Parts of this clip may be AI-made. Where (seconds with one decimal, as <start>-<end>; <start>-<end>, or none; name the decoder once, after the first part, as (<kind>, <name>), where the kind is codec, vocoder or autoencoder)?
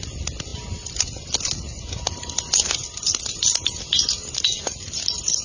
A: none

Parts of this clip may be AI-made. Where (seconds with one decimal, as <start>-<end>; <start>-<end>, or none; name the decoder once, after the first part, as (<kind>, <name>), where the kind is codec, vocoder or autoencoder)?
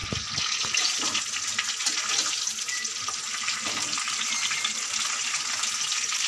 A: none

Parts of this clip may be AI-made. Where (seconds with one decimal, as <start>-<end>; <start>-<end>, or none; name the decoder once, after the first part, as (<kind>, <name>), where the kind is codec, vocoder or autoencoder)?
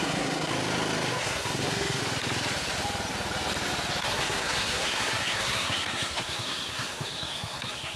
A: 0.0-0.5 (codec, SNAC); 1.2-2.0; 4.0-8.0